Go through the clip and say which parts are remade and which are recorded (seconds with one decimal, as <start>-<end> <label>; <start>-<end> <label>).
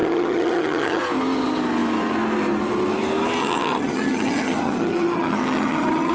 0.0-1.0 remade; 1.0-3.4 recorded; 3.4-6.1 remade